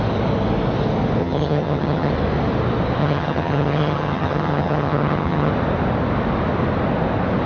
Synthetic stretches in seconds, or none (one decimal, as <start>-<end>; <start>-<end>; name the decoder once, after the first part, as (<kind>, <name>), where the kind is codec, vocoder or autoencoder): 1.2-2.1 (vocoder, HiFi-GAN); 3.0-5.5